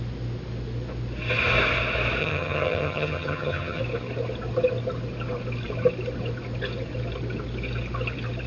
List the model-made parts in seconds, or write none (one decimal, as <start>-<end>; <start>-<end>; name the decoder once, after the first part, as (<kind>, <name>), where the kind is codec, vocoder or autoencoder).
2.2-3.8 (vocoder, HiFi-GAN)